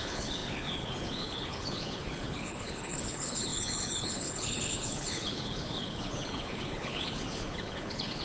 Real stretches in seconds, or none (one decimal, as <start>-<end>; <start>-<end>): none